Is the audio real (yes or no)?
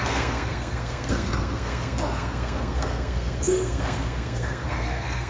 no